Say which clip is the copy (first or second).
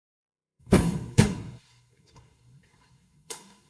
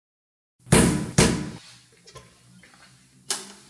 first